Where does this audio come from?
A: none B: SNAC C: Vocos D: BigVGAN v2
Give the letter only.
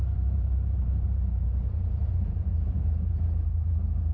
D